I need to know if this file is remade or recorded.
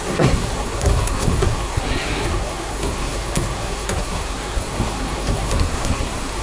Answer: remade